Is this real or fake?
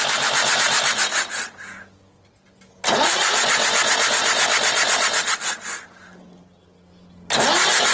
real